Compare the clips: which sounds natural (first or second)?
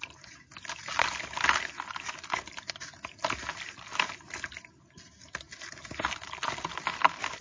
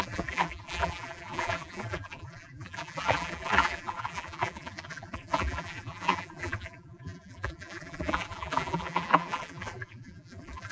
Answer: first